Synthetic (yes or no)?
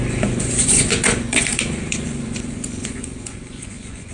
yes